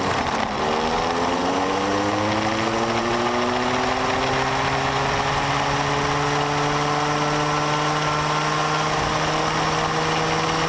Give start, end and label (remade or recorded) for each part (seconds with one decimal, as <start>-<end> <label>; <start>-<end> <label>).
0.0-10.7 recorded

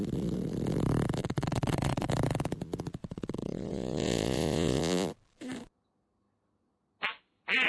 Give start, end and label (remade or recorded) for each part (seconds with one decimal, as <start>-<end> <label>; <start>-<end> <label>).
0.0-1.2 recorded; 1.2-2.1 remade; 2.1-3.0 recorded; 3.0-4.8 remade; 4.8-7.7 recorded

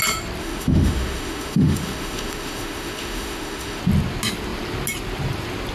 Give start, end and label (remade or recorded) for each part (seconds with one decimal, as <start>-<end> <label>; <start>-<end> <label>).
0.0-0.4 recorded; 0.4-3.8 remade; 3.8-5.7 recorded

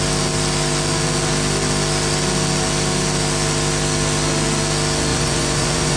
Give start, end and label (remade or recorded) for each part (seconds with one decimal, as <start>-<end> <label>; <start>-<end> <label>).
0.0-5.1 recorded; 5.1-6.0 remade

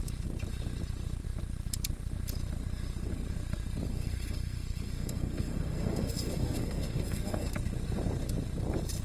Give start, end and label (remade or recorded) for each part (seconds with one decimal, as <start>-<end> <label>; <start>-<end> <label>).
0.0-3.9 recorded; 3.9-7.5 remade; 7.5-9.0 recorded

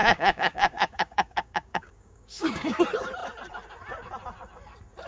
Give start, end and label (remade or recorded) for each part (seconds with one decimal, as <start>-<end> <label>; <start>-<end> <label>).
0.0-2.8 remade; 2.8-5.1 recorded

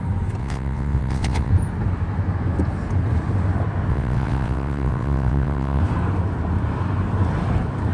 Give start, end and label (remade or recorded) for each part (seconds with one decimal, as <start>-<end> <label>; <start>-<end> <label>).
0.0-0.4 recorded; 0.4-1.5 remade; 1.5-3.9 recorded; 3.9-5.8 remade; 5.8-7.9 recorded